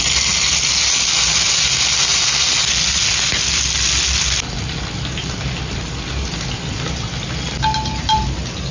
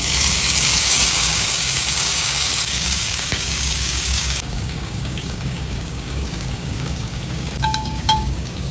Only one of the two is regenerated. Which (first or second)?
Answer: second